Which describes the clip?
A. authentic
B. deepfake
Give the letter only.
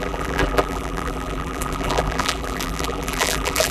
B